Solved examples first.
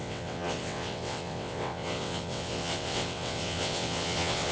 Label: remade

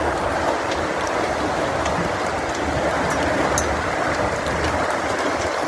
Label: recorded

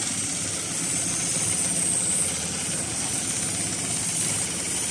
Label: recorded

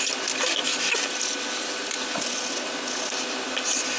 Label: recorded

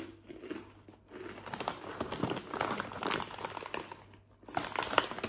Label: recorded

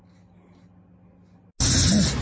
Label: recorded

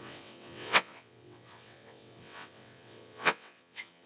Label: remade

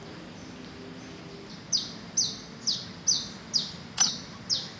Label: recorded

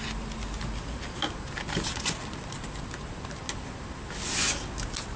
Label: recorded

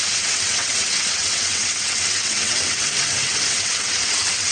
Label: remade